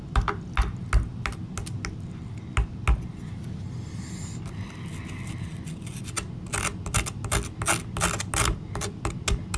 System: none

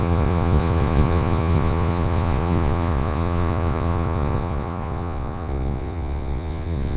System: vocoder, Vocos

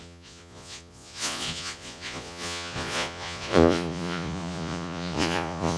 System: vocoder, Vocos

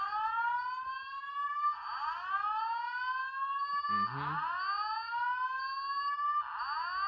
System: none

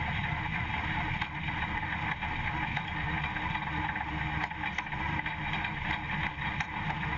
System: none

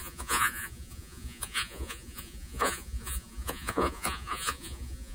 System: vocoder, Vocos